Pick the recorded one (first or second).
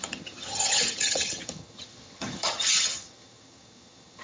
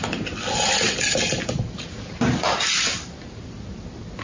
second